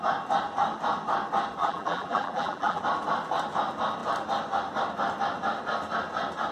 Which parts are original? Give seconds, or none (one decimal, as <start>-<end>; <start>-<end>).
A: 0.0-1.6; 2.8-6.5